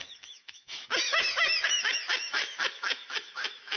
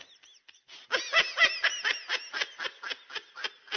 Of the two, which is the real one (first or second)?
second